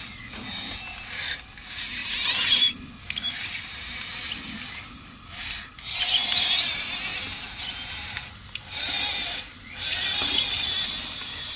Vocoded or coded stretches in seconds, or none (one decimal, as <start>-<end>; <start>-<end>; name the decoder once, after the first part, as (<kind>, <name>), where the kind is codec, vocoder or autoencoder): none